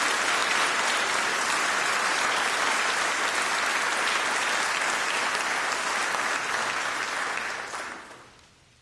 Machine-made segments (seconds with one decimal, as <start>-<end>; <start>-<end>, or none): 0.4-3.2